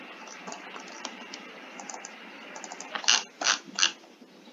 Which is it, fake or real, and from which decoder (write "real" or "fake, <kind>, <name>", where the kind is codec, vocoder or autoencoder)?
real